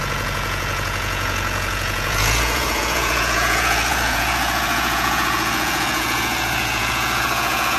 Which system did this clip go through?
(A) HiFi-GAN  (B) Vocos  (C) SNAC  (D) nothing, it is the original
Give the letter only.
B